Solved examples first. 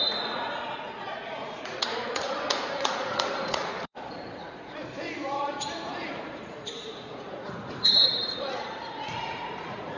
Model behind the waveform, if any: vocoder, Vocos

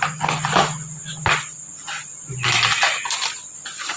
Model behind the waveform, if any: none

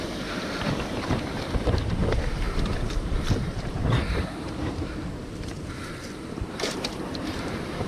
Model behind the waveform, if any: vocoder, BigVGAN v2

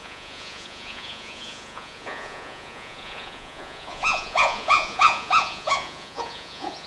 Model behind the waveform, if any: vocoder, Vocos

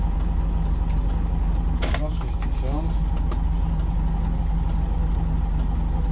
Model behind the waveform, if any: none